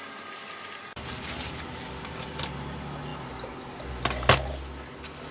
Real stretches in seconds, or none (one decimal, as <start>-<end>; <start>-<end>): 0.0-5.3